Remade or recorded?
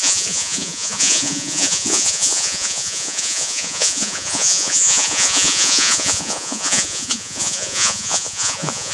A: remade